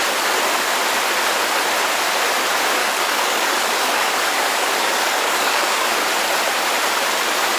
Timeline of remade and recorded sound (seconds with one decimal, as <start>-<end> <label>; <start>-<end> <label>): 0.0-2.8 recorded; 2.8-6.0 remade; 6.0-7.6 recorded